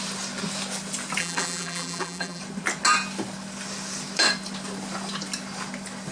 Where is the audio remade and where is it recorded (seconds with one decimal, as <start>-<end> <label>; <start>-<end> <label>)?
0.0-1.2 recorded; 1.2-2.4 remade; 2.4-6.1 recorded